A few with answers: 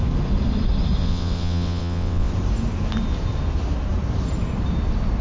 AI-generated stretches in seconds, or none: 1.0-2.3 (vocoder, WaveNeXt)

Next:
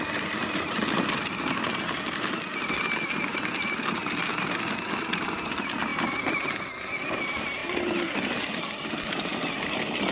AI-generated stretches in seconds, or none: 7.6-9.1 (vocoder, BigVGAN v2)

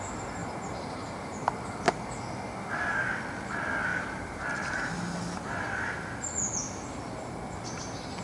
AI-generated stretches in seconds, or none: 3.9-4.9 (vocoder, BigVGAN v2)

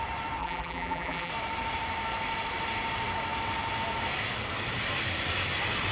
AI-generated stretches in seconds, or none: 0.4-1.3 (vocoder, BigVGAN v2)

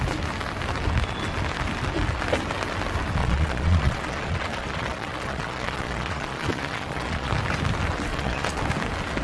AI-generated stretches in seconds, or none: 3.2-7.3 (vocoder, Vocos); 8.1-8.6

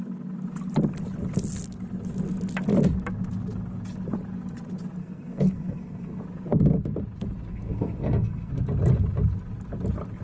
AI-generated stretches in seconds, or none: 5.0-6.2 (codec, SNAC); 7.5-8.5